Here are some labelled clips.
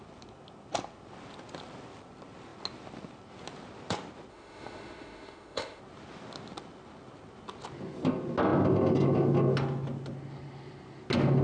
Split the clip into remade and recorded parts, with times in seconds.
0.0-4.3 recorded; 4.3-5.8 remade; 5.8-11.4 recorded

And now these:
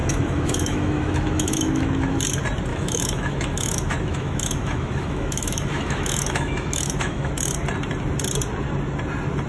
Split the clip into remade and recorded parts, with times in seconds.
0.0-2.2 remade; 2.2-2.7 recorded; 2.7-7.3 remade; 7.3-9.5 recorded

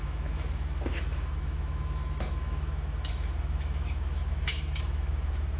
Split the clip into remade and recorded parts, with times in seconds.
0.0-5.6 remade

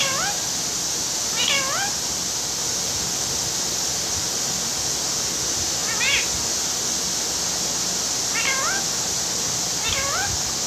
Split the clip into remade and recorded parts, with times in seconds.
0.0-10.7 recorded

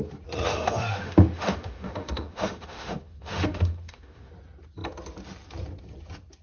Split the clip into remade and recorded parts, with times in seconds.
0.0-0.5 recorded; 0.5-4.3 remade; 4.3-6.4 recorded

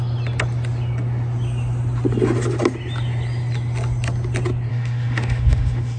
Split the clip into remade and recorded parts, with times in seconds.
0.0-4.7 recorded; 4.7-6.0 remade

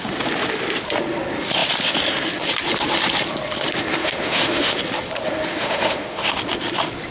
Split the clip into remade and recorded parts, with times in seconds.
0.0-4.0 recorded; 4.0-4.8 remade; 4.8-5.5 recorded; 5.5-6.4 remade; 6.4-7.1 recorded